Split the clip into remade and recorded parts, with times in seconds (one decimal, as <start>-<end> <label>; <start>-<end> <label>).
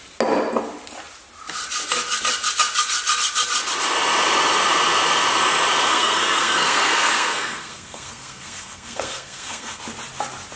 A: 0.0-5.9 recorded; 5.9-9.8 remade; 9.8-10.6 recorded